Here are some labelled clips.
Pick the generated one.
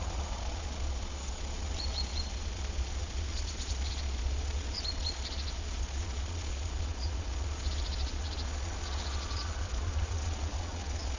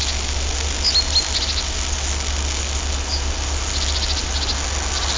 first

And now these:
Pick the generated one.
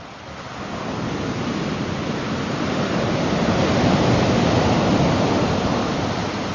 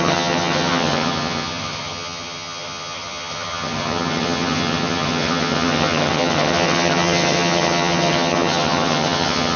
second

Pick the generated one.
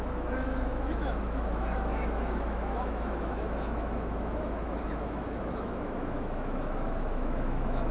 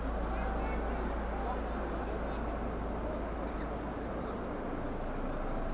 first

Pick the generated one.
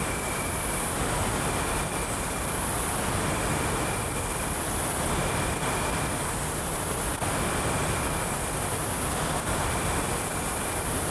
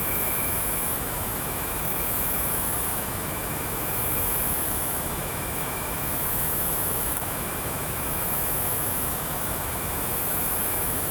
second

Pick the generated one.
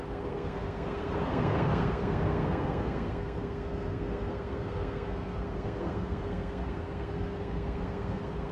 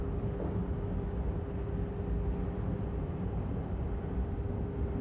first